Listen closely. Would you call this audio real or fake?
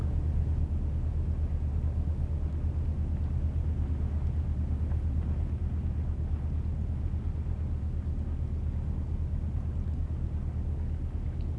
real